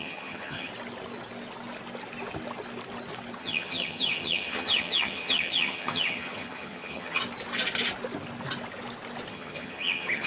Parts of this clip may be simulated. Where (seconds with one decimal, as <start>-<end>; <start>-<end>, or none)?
0.0-0.7; 3.4-7.2; 9.3-10.3